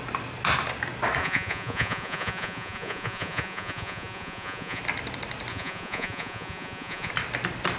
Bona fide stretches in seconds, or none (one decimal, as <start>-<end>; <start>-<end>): 0.0-1.2; 4.8-5.5; 7.1-7.8